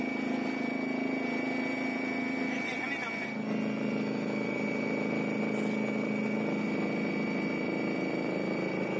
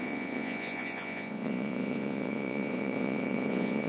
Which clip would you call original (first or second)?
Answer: first